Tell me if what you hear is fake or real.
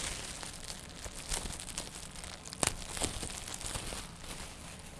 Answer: real